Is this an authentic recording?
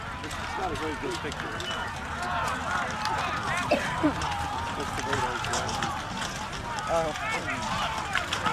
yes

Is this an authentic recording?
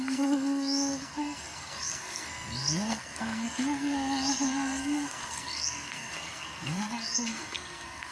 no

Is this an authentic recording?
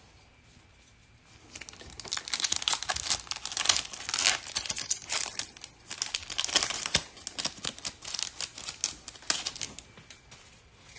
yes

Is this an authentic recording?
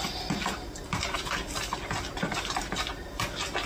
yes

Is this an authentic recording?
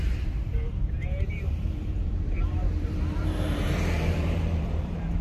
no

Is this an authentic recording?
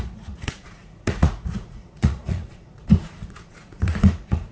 no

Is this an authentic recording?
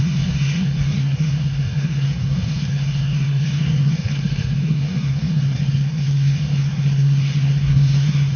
no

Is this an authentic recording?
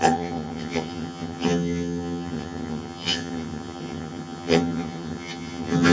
no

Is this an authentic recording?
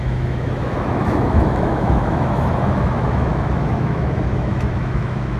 no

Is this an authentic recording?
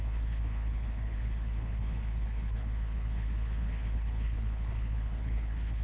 no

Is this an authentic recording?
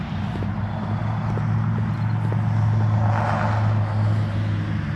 yes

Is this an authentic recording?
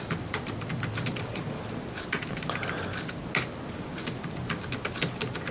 yes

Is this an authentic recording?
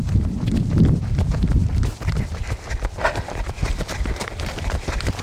yes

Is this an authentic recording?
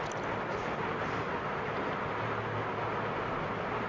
yes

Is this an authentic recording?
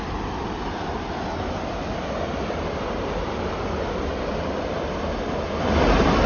yes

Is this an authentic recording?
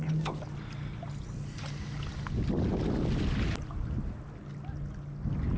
yes